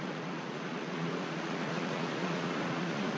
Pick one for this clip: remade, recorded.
remade